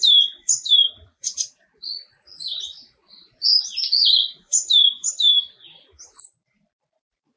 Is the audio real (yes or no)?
no